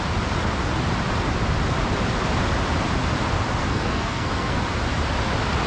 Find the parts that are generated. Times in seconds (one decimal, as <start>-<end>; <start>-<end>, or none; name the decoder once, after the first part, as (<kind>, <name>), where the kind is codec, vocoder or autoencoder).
3.6-4.6 (codec, SNAC)